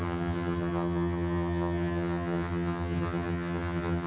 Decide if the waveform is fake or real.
fake